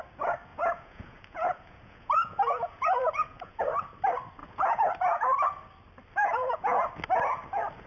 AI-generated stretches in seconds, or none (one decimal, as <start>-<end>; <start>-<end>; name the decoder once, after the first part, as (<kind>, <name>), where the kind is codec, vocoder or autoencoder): 0.5-3.6 (vocoder, Vocos); 4.4-4.9; 6.2-6.8